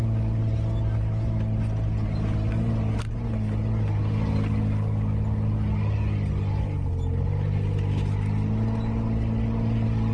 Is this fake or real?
real